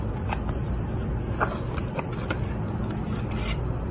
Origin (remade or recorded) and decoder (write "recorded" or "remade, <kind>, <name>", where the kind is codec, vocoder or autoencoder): recorded